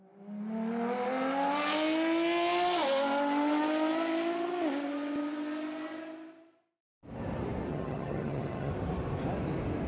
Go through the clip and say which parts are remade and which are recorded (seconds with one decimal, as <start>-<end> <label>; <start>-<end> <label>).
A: 0.0-7.7 recorded; 7.7-8.7 remade; 8.7-9.9 recorded